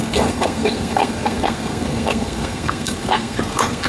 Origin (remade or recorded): remade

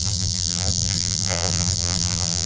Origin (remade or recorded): remade